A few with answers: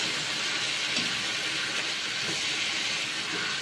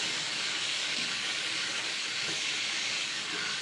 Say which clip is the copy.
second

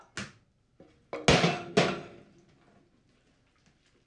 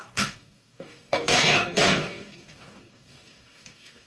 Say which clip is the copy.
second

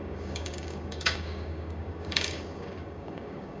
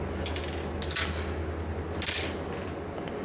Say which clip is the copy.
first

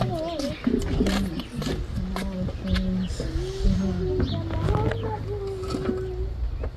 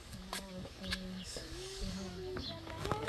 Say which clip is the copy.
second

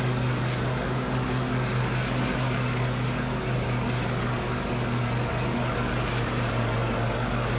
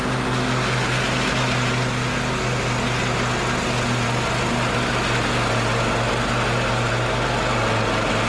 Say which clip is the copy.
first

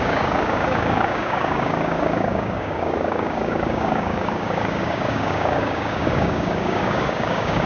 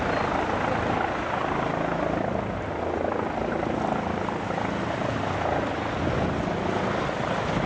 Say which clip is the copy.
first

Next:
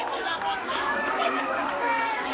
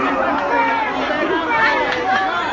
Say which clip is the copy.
first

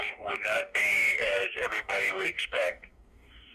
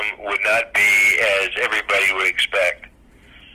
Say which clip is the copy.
first